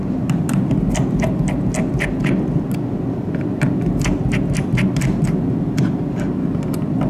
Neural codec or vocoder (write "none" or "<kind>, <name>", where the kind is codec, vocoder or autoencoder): none